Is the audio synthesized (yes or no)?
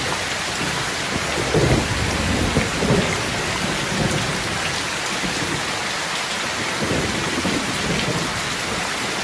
no